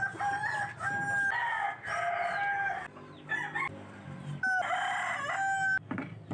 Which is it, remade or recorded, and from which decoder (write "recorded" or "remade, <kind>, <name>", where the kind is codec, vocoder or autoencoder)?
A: recorded